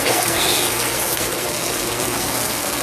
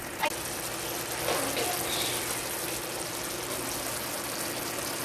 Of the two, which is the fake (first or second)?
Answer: first